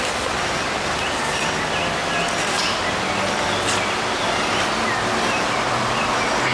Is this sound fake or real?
real